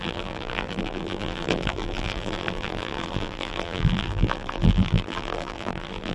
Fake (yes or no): yes